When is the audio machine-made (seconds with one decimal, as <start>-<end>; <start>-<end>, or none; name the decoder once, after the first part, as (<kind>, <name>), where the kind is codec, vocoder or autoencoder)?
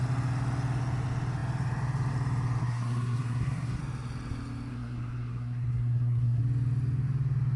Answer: 2.6-3.8 (codec, SNAC); 4.7-6.4